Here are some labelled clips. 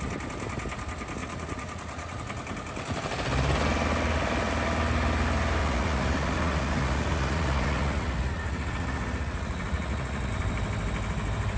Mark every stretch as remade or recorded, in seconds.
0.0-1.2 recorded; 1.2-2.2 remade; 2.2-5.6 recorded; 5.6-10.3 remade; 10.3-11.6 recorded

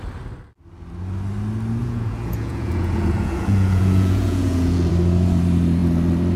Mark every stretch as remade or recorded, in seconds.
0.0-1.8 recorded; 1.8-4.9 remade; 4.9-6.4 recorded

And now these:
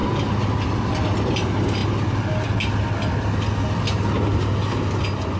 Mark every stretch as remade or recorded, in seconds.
0.0-5.4 recorded

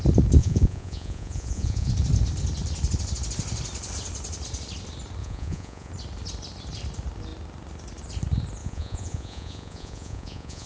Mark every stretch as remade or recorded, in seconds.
0.0-0.4 recorded; 0.4-1.9 remade; 1.9-5.2 recorded; 5.2-5.9 remade; 5.9-8.6 recorded; 8.6-10.7 remade

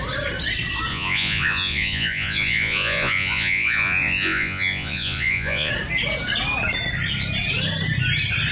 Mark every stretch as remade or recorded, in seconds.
0.0-0.9 recorded; 0.9-5.7 remade; 5.7-8.5 recorded

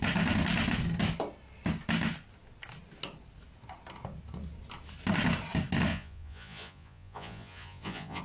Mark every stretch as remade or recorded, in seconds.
0.0-5.9 recorded; 5.9-8.2 remade